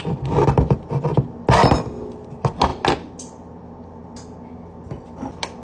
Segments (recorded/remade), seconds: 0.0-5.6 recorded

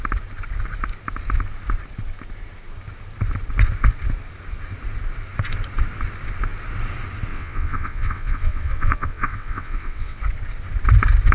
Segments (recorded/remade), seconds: 0.0-7.3 recorded; 7.3-10.2 remade; 10.2-11.3 recorded